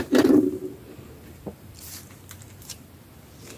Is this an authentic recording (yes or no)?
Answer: no